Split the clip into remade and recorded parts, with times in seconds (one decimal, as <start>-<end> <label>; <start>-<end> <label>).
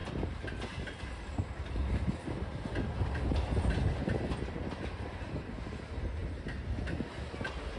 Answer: 0.0-7.8 recorded